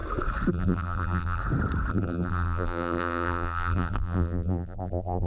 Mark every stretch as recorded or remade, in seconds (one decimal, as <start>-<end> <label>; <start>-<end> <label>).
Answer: 0.0-0.5 recorded; 0.5-1.4 remade; 1.4-1.9 recorded; 1.9-5.3 remade